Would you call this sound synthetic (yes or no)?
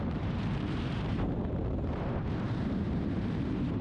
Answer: yes